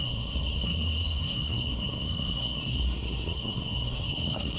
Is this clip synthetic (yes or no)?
yes